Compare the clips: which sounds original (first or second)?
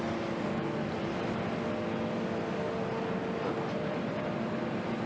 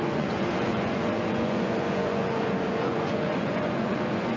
first